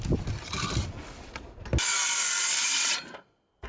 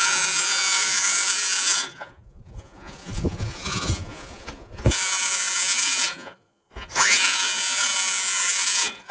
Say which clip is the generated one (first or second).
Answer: second